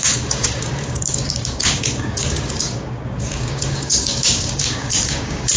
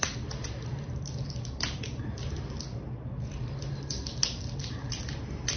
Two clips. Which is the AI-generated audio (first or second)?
first